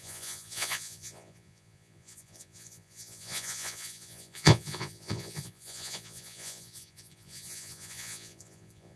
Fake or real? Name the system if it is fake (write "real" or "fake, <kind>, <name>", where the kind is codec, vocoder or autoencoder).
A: fake, vocoder, Vocos